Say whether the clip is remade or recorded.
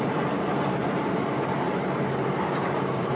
remade